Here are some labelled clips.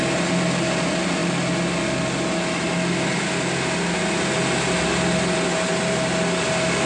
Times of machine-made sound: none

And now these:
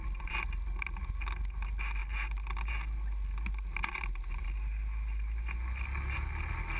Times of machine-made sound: none

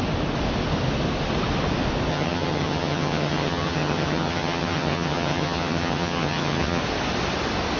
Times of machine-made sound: 2.1-6.8 (vocoder, HiFi-GAN)

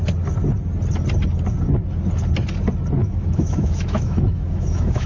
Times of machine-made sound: 3.0-5.1 (autoencoder, DAC-VAE)

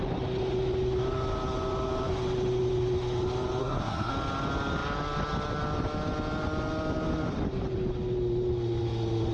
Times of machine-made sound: 3.6-4.1 (codec, SNAC)

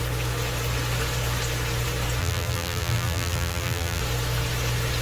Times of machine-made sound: 2.2-4.0 (vocoder, BigVGAN v2)

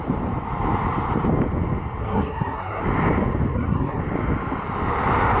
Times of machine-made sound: 2.0-2.8 (codec, SNAC); 3.5-4.0